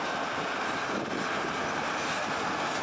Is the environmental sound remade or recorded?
recorded